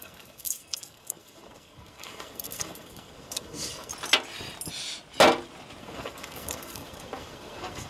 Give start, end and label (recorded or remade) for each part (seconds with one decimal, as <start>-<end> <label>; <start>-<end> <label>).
0.0-3.9 remade; 3.9-5.8 recorded; 5.8-7.9 remade